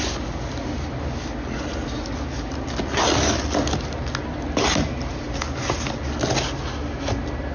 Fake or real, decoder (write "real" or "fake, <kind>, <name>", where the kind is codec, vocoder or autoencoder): real